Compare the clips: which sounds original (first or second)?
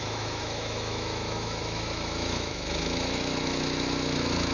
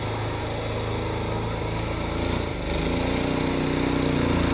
second